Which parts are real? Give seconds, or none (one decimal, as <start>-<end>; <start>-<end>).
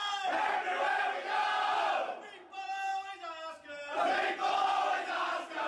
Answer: 0.0-5.7